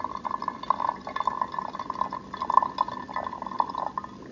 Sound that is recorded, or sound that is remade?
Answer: recorded